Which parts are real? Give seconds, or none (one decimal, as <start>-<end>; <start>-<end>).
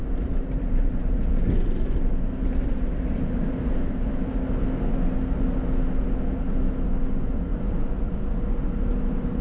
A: 4.1-7.5; 8.0-9.4